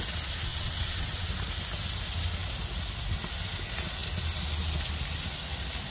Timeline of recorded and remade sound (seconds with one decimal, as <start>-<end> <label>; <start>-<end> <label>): 0.0-0.5 recorded; 0.5-1.3 remade; 1.3-5.9 recorded